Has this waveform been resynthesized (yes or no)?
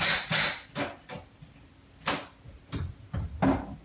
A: no